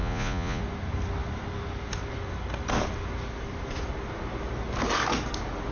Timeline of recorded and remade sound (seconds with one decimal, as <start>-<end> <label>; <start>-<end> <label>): 0.0-0.6 remade; 0.6-5.7 recorded